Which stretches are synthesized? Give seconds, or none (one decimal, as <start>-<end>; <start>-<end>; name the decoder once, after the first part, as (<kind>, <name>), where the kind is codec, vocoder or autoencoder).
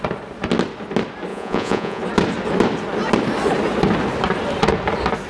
1.3-2.0 (vocoder, Vocos)